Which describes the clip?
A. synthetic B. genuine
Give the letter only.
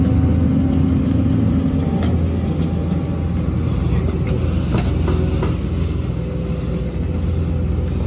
B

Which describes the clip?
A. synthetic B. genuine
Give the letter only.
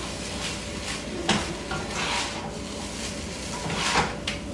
B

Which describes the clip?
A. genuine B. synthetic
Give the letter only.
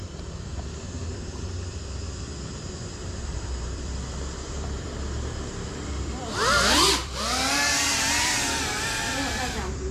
B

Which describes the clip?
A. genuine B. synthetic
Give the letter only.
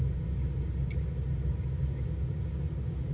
A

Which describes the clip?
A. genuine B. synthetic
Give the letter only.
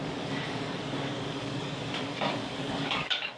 B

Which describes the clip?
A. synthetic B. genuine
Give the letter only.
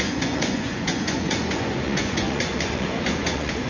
A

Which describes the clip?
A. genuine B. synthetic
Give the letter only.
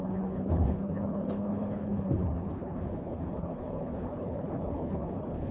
B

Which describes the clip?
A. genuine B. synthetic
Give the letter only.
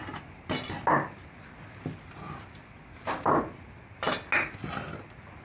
A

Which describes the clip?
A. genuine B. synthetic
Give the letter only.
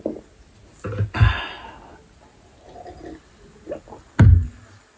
A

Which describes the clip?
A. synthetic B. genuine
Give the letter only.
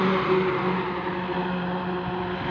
B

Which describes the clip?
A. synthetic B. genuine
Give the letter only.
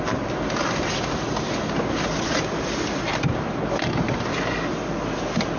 B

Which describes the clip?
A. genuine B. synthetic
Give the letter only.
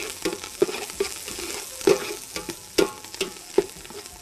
B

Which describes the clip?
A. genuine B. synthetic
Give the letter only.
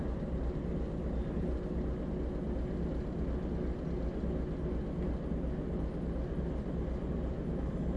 A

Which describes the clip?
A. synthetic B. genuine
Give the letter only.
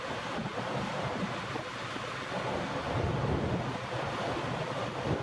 B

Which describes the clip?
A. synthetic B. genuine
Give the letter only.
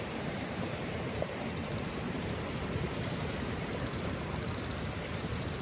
A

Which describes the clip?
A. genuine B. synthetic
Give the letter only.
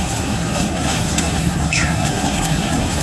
B